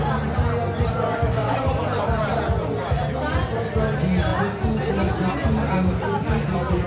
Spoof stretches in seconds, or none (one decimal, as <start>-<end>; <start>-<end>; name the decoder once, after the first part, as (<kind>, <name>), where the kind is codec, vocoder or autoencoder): 1.4-2.4 (vocoder, BigVGAN v2)